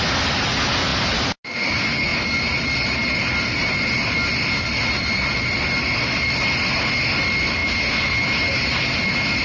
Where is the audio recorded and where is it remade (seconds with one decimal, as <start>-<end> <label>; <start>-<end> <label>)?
0.0-9.4 recorded

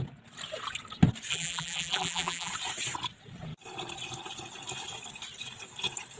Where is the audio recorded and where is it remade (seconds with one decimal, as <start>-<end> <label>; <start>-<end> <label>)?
0.0-1.3 recorded; 1.3-2.5 remade; 2.5-6.2 recorded

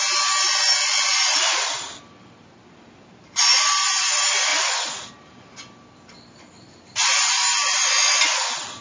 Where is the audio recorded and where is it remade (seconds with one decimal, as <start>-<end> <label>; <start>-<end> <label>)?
0.0-8.8 recorded

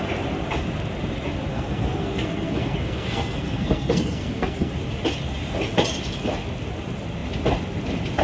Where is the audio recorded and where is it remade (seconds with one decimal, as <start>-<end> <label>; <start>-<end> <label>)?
0.0-1.5 recorded; 1.5-4.7 remade; 4.7-8.2 recorded